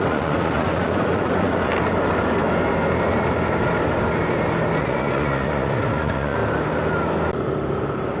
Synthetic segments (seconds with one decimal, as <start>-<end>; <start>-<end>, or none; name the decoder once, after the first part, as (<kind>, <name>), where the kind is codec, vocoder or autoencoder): 0.0-1.7 (vocoder, Vocos); 4.8-6.4